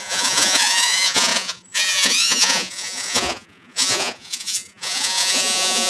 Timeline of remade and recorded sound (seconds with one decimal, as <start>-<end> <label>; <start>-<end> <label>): 0.0-5.9 remade